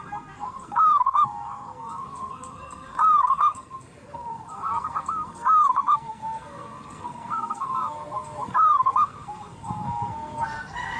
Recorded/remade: remade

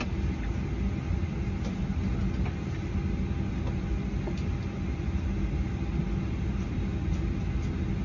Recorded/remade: recorded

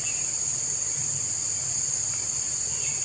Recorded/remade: recorded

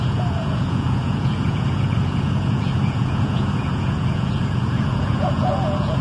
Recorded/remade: remade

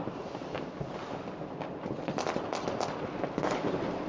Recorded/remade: recorded